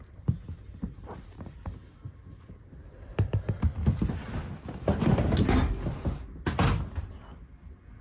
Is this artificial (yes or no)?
no